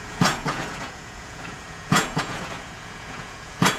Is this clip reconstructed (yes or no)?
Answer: yes